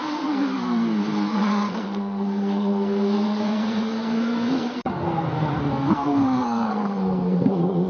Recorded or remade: remade